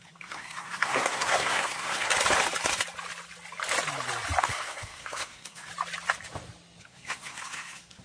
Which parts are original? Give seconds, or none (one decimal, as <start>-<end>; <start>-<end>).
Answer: 2.1-4.4; 5.7-6.8